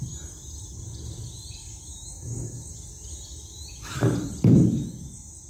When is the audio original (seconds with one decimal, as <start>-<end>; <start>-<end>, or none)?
0.0-5.5